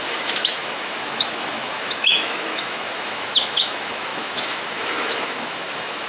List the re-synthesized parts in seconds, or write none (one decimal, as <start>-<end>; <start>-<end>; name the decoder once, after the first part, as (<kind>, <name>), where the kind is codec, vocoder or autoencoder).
0.0-6.1 (autoencoder, DAC-VAE)